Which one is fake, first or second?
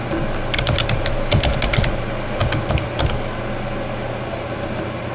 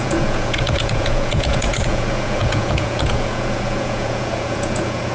second